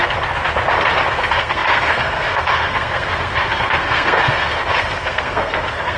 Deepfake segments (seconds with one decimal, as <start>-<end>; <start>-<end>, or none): 1.1-6.0